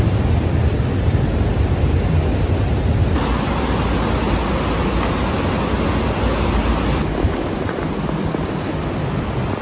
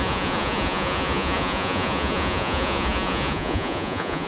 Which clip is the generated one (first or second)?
second